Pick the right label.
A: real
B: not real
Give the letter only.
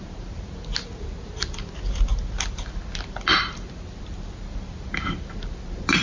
A